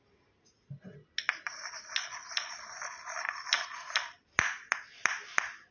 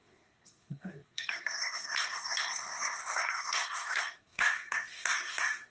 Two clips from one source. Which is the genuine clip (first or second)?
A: first